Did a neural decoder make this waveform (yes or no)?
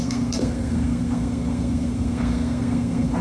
yes